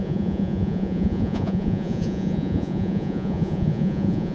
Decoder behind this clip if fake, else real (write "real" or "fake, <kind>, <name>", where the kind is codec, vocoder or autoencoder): fake, vocoder, Vocos